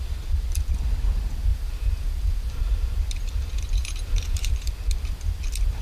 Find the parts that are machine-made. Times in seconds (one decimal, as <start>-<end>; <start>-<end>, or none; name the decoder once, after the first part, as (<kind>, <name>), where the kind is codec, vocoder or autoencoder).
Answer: 1.5-2.6 (vocoder, BigVGAN v2); 3.8-4.7